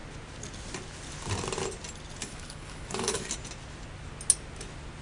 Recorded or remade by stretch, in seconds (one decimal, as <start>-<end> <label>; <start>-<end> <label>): 0.0-2.2 recorded; 2.2-3.3 remade; 3.3-5.0 recorded